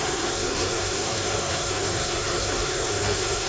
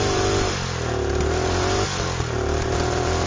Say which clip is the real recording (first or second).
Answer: second